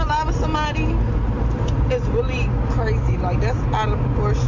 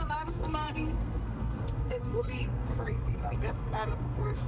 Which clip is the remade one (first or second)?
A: second